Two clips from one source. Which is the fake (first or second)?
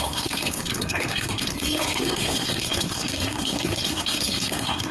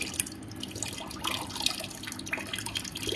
first